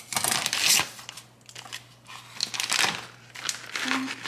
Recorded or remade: recorded